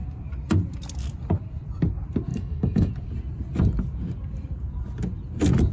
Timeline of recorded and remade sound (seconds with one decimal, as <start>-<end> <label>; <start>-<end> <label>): 0.0-2.3 recorded; 2.3-2.9 remade; 2.9-5.7 recorded